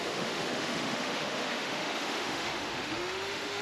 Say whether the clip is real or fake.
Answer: fake